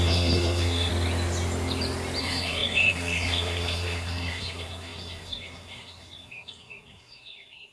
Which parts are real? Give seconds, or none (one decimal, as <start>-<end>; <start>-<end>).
0.9-2.2